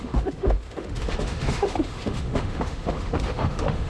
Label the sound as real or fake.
fake